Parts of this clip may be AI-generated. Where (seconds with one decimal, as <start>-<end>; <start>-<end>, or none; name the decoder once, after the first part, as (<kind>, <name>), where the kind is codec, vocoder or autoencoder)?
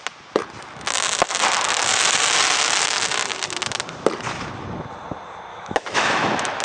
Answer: 5.5-6.6 (autoencoder, DAC-VAE)